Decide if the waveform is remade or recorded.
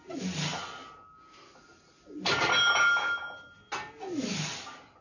recorded